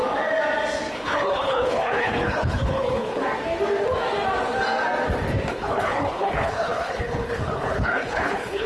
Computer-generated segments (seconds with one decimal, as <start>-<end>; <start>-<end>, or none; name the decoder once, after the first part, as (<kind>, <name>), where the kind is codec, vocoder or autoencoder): 0.9-3.2 (codec, HILCodec); 5.5-8.7